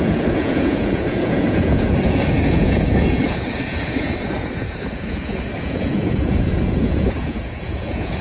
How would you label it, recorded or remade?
remade